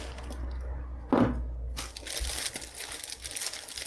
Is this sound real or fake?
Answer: real